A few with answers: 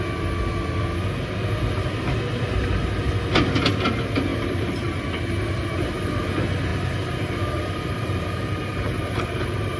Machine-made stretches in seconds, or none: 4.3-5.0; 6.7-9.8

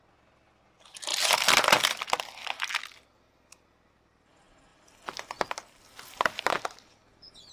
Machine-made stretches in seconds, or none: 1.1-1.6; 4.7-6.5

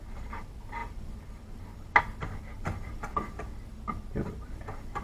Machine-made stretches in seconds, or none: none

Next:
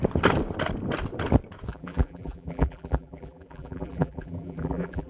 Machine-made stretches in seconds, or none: 1.7-5.1